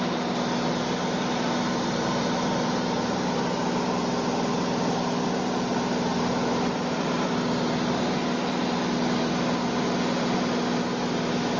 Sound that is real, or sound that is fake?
real